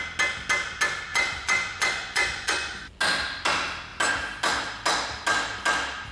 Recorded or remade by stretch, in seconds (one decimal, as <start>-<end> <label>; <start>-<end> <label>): 0.0-1.1 recorded; 1.1-2.9 remade; 2.9-6.1 recorded

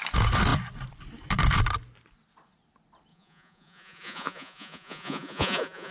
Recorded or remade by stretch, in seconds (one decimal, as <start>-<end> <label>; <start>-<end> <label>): 0.0-3.1 recorded; 3.1-5.9 remade

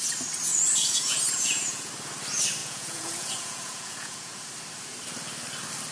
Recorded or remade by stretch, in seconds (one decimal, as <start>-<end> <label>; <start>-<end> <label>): 0.0-0.5 recorded; 0.5-1.9 remade; 1.9-2.6 recorded; 2.6-4.5 remade; 4.5-5.9 recorded

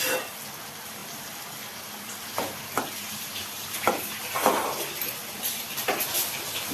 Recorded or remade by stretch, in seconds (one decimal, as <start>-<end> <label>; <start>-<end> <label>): 0.0-6.7 recorded

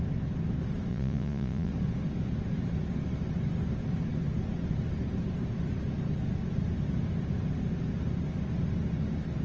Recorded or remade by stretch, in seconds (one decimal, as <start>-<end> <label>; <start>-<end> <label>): 0.0-0.9 recorded; 0.9-1.7 remade; 1.7-9.4 recorded

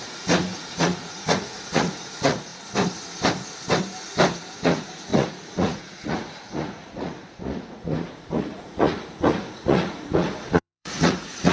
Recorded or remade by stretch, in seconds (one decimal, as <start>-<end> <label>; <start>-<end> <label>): 0.0-2.5 remade; 2.5-4.4 recorded; 4.4-11.5 remade

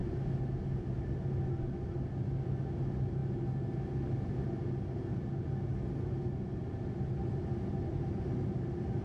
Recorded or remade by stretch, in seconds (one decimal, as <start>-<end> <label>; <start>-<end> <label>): 0.0-9.0 recorded